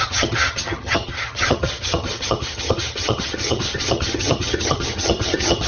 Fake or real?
fake